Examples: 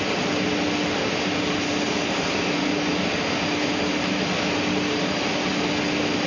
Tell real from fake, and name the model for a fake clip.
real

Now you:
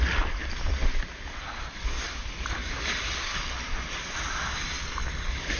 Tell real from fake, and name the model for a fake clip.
real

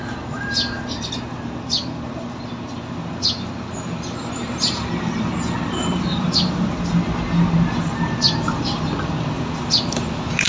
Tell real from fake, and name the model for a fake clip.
real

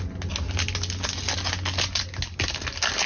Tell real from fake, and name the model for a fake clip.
real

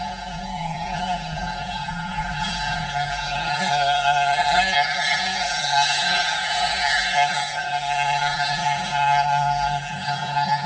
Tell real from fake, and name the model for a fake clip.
fake, codec, SNAC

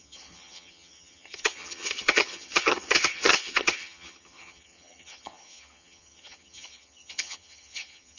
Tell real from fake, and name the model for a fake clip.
fake, vocoder, HiFi-GAN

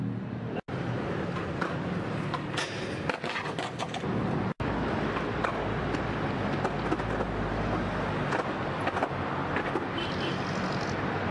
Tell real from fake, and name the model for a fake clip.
real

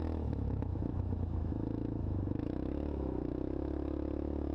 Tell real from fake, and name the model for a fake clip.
fake, autoencoder, DAC-VAE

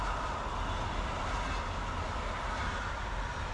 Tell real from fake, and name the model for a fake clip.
real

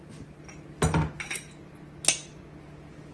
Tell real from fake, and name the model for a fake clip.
real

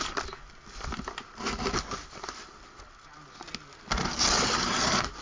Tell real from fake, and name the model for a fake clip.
real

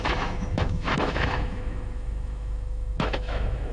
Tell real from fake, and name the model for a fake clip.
fake, autoencoder, DAC-VAE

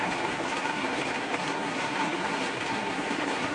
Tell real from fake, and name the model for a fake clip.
fake, codec, SNAC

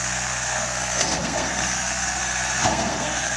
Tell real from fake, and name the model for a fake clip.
fake, codec, SNAC